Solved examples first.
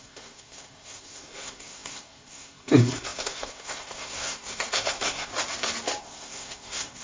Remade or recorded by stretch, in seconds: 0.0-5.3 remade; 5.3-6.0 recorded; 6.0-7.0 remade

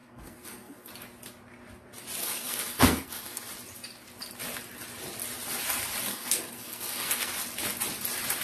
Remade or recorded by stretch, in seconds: 0.0-0.9 remade; 0.9-2.2 recorded; 2.2-3.4 remade; 3.4-6.1 recorded; 6.1-7.3 remade; 7.3-8.4 recorded

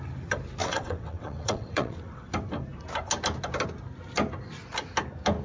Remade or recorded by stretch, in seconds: 0.0-0.6 recorded; 0.6-2.3 remade; 2.3-5.4 recorded

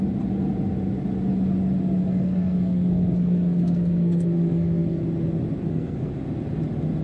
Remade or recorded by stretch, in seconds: 0.0-2.0 recorded; 2.0-5.0 remade; 5.0-5.6 recorded; 5.6-6.1 remade; 6.1-7.0 recorded

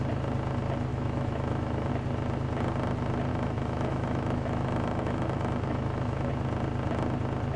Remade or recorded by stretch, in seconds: 0.0-0.9 recorded; 0.9-1.9 remade; 1.9-3.3 recorded; 3.3-6.3 remade; 6.3-7.6 recorded

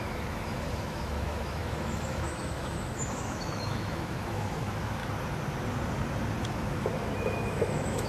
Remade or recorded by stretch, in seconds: 0.0-5.0 remade; 5.0-6.4 recorded; 6.4-8.1 remade

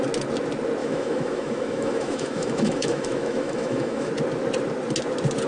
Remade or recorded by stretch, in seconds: 0.0-0.8 recorded; 0.8-4.1 remade; 4.1-5.5 recorded